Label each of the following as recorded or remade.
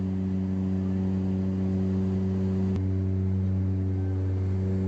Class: recorded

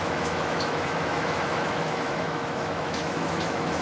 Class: remade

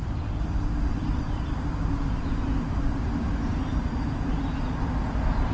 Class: recorded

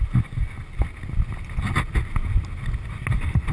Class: recorded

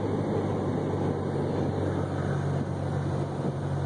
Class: recorded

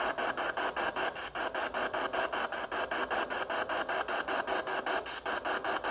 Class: recorded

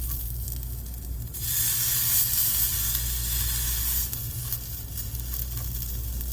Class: recorded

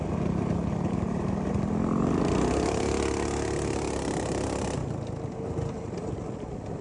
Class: recorded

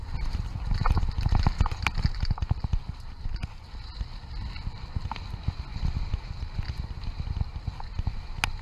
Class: recorded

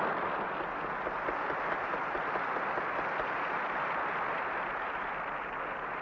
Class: recorded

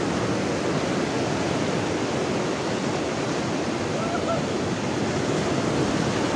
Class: recorded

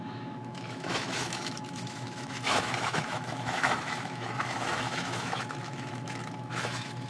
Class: remade